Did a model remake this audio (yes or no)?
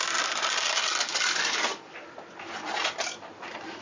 yes